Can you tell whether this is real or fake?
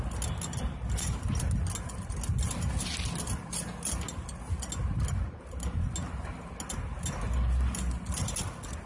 real